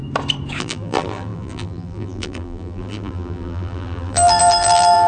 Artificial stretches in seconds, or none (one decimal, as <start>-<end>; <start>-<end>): 0.6-5.1

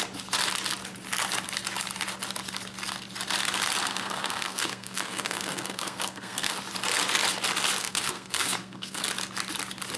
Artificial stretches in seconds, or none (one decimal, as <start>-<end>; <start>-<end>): 3.8-6.6; 7.8-9.0

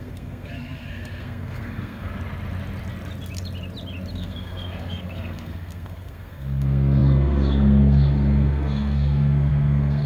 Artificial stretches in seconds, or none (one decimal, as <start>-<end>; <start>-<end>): 0.0-2.1; 4.1-10.1

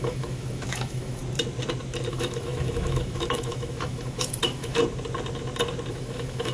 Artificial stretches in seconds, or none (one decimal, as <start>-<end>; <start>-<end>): 0.0-1.2; 2.1-4.8; 5.9-6.5

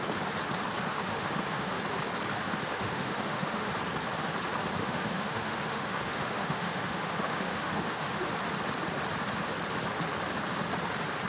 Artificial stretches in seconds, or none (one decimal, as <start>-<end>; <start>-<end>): 0.9-1.8; 2.3-3.7; 4.8-8.3